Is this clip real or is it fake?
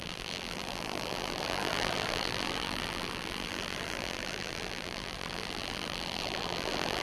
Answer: fake